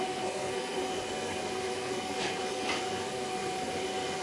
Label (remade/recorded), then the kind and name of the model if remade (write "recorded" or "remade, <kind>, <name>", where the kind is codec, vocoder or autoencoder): remade, codec, SNAC